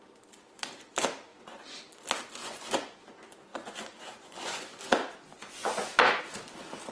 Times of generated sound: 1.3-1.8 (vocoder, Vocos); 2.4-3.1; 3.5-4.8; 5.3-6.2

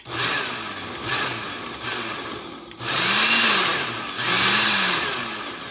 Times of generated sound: none

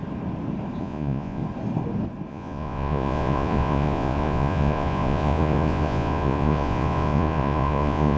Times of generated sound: 0.8-1.4 (vocoder, Vocos); 2.3-8.2

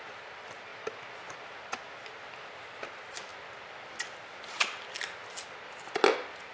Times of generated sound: none